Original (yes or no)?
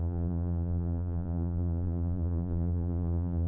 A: no